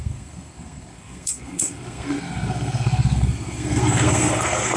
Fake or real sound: fake